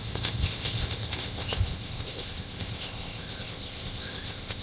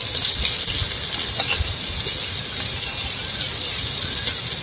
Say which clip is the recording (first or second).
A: second